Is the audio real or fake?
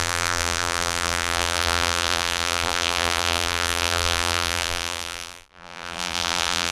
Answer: fake